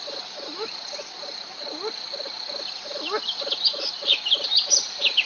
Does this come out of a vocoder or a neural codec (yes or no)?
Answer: no